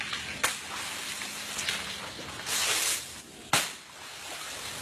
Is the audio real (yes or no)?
yes